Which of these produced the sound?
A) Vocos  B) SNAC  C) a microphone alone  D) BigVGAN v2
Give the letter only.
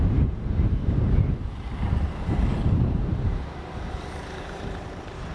D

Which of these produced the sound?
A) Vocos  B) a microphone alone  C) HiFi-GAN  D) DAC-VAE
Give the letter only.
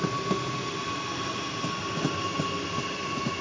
B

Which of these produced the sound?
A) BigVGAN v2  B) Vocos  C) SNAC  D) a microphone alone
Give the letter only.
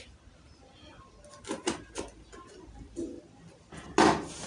D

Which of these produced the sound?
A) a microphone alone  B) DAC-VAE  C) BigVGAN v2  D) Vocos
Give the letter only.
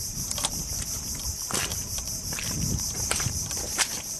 C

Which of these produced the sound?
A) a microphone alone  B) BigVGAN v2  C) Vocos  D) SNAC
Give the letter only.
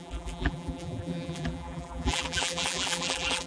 B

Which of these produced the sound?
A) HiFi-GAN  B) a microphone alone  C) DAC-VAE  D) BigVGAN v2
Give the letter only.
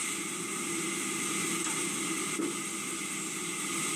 B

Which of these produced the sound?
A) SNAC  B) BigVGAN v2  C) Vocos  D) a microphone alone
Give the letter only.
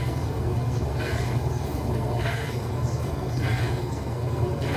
A